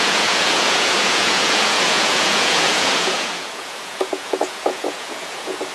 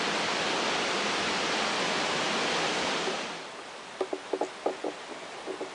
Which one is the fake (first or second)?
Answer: first